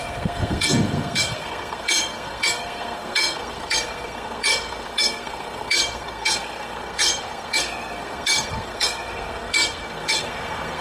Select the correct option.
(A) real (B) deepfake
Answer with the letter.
B